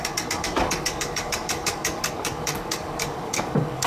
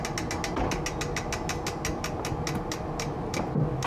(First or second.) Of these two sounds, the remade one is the first